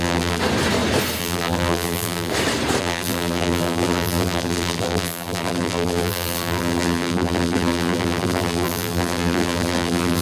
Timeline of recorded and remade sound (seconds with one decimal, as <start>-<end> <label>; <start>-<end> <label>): 0.0-0.4 remade; 0.4-1.2 recorded; 1.2-2.3 remade; 2.3-2.8 recorded; 2.8-10.2 remade